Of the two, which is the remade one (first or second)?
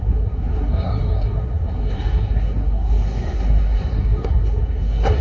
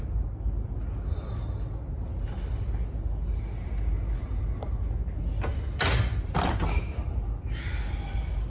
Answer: first